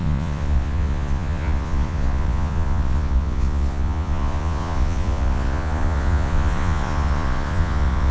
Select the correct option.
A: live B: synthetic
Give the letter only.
B